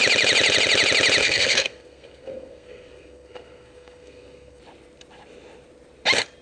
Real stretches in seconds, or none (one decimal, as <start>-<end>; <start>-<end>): 0.0-1.2; 4.6-6.4